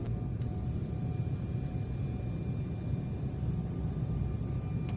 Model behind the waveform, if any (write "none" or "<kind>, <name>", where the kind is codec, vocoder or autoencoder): none